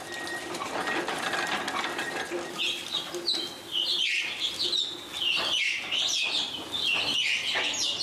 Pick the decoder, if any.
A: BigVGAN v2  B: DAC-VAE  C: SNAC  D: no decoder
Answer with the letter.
D